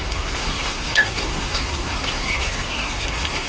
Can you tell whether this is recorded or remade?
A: remade